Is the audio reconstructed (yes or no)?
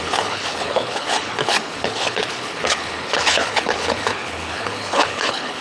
yes